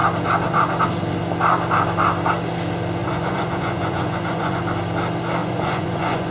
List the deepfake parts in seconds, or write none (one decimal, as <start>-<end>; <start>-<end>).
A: 3.0-4.6; 5.4-6.3